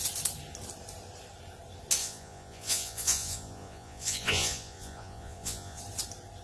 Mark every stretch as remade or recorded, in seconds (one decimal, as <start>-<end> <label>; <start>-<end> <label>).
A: 0.0-2.0 recorded; 2.0-5.8 remade; 5.8-6.4 recorded